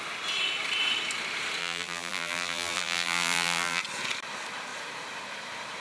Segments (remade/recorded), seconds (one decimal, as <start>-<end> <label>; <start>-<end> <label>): 0.0-1.6 recorded; 1.6-3.8 remade; 3.8-5.8 recorded